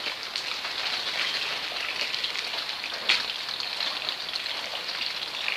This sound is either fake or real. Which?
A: real